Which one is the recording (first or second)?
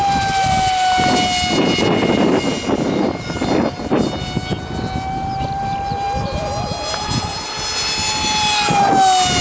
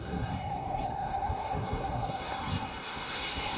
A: first